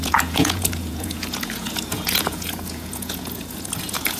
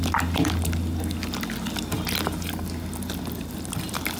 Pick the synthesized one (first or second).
first